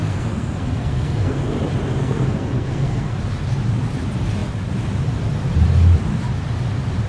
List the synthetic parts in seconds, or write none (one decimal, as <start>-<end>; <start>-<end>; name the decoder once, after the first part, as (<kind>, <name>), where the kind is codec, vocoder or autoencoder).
0.0-1.6 (codec, SNAC); 2.0-3.2